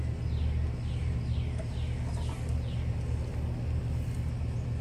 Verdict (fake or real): real